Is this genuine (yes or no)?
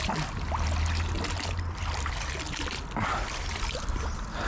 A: yes